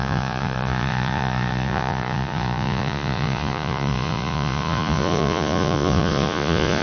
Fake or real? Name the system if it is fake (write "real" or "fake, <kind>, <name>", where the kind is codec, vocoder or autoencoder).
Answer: fake, vocoder, Vocos